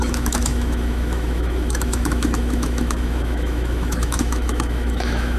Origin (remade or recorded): remade